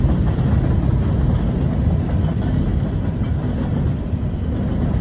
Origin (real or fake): real